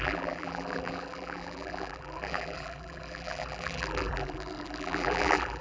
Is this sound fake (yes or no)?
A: yes